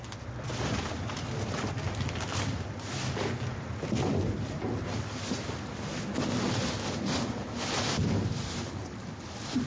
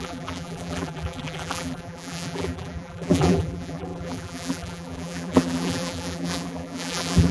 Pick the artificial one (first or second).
second